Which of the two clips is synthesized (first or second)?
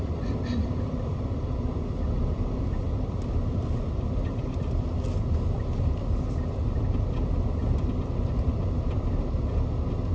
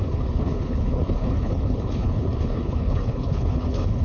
second